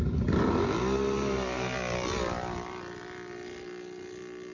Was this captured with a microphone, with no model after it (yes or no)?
yes